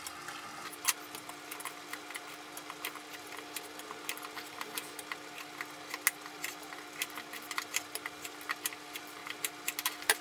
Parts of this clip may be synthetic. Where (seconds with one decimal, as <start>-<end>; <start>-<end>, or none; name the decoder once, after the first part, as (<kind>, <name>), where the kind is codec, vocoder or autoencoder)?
none